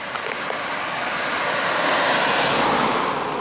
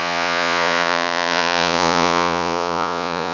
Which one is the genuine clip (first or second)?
first